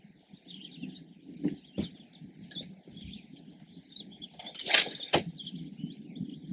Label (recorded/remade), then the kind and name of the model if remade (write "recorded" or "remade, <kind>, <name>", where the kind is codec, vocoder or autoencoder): recorded